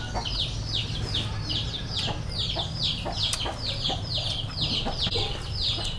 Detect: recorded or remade recorded